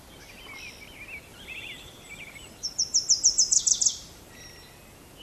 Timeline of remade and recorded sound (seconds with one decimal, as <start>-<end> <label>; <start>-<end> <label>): 0.0-1.3 recorded; 1.3-4.4 remade; 4.4-5.2 recorded